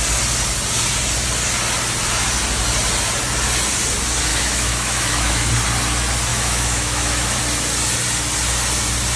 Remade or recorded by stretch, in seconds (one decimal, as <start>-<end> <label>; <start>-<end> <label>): 0.0-4.3 recorded; 4.3-5.5 remade; 5.5-6.3 recorded; 6.3-7.4 remade; 7.4-9.2 recorded